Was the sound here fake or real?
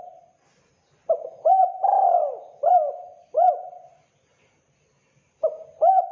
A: real